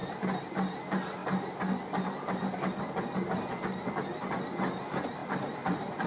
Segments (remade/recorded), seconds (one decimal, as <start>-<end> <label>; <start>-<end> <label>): 0.0-0.5 remade; 0.5-5.2 recorded; 5.2-6.1 remade